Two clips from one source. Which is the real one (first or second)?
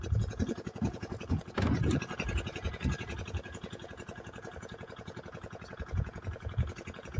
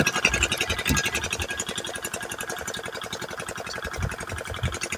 second